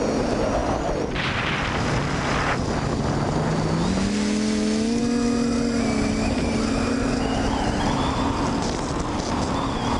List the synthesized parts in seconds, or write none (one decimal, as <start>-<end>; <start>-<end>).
none